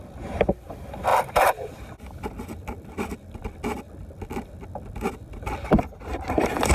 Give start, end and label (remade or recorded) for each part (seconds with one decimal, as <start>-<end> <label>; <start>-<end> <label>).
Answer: 0.0-1.1 recorded; 1.1-2.9 remade; 2.9-6.7 recorded